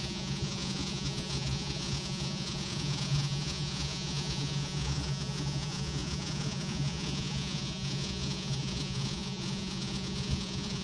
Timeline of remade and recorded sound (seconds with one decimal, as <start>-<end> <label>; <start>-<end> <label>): 0.0-10.8 remade